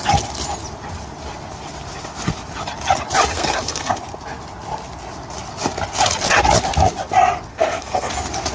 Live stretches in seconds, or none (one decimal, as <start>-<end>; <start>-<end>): 0.0-3.3; 3.9-7.5; 8.1-8.5